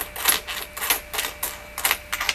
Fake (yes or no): no